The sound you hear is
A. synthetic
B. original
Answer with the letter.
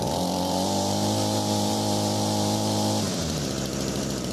A